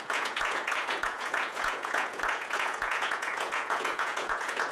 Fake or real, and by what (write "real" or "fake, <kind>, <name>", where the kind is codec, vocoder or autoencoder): fake, vocoder, Vocos